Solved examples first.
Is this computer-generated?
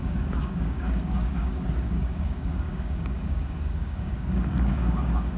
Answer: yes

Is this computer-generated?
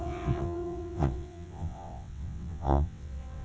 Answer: yes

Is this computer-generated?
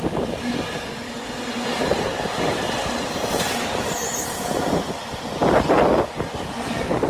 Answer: no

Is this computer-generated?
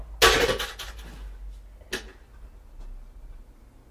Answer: no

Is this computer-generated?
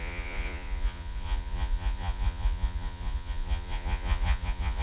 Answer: yes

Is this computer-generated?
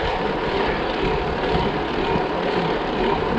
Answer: no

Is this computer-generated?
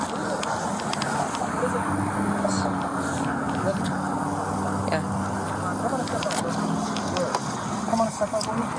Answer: no